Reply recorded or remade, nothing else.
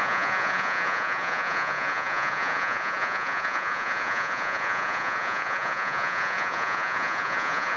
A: remade